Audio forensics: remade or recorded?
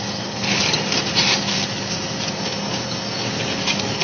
recorded